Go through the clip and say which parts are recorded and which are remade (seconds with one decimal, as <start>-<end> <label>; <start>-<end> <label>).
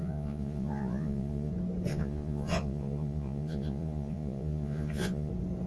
0.0-1.5 remade; 1.5-1.9 recorded; 1.9-5.3 remade; 5.3-5.7 recorded